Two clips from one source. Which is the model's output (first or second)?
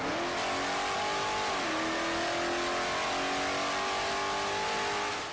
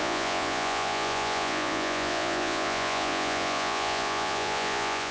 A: second